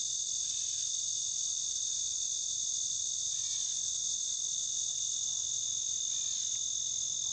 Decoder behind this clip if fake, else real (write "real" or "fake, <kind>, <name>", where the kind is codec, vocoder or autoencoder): real